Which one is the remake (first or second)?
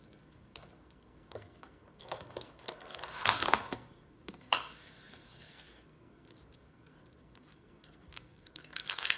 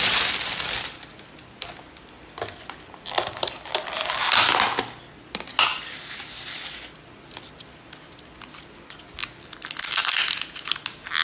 first